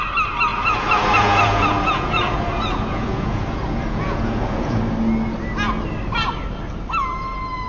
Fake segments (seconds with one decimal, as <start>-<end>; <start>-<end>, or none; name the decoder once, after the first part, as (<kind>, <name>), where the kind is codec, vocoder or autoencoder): 0.5-4.8 (vocoder, Vocos)